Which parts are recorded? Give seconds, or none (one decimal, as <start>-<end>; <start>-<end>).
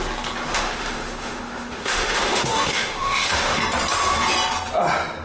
0.0-0.5; 3.6-5.2